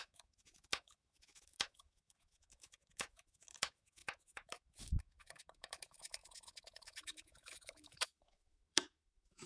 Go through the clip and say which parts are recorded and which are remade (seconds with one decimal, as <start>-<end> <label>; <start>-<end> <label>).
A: 0.0-9.5 remade